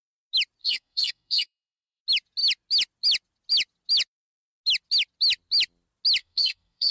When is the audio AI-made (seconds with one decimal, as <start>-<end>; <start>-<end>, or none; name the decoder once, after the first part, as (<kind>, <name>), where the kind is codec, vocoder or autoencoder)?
0.6-2.0 (codec, SNAC); 6.2-6.9